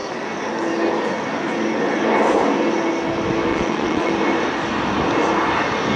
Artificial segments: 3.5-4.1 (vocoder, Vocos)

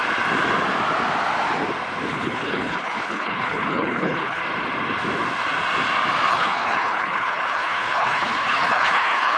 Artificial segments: 2.1-4.4 (codec, HILCodec); 6.3-9.4

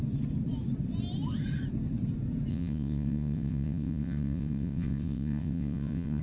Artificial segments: 2.5-6.2 (vocoder, WaveNeXt)

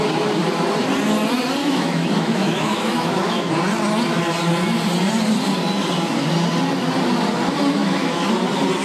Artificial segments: 1.6-3.5 (autoencoder, DAC-VAE); 7.8-8.3

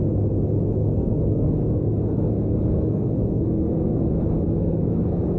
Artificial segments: 0.8-4.0 (codec, SNAC); 4.6-5.4